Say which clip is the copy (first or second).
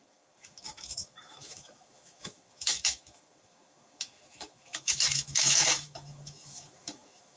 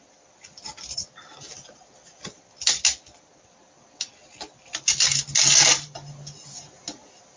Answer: first